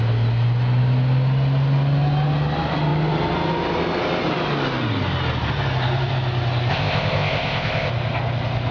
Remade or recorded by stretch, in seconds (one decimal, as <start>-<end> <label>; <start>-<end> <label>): 0.0-6.7 recorded; 6.7-7.9 remade; 7.9-8.7 recorded